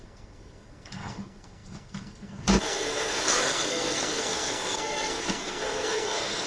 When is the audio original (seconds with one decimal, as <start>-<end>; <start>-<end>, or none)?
none